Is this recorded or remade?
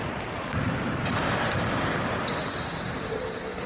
remade